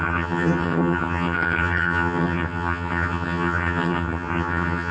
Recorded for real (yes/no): no